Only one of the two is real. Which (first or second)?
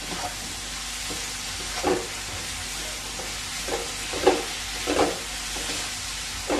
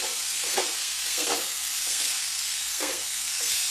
first